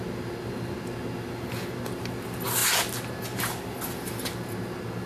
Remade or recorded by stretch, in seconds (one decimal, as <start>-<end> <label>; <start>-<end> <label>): 0.0-5.1 recorded